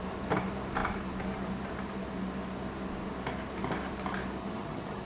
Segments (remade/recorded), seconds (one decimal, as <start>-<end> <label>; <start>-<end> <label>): 0.0-4.4 recorded; 4.4-5.1 remade